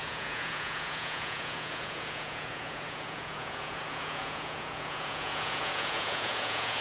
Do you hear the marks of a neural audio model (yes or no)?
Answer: yes